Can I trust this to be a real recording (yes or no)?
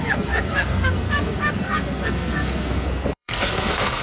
no